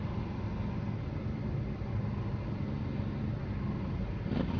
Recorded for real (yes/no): yes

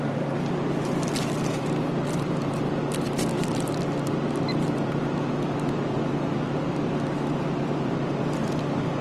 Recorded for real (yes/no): no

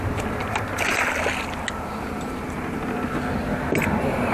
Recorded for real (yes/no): yes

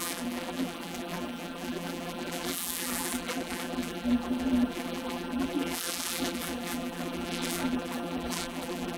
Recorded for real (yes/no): no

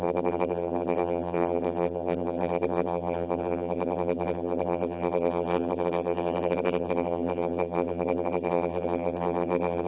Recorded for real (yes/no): no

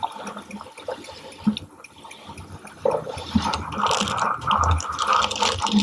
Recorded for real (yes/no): yes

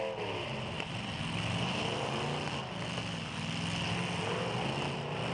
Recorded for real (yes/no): yes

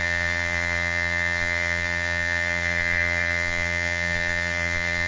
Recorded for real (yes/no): no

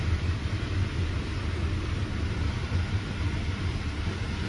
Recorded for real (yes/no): yes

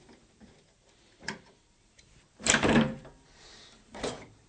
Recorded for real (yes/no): no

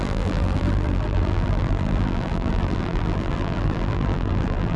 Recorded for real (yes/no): no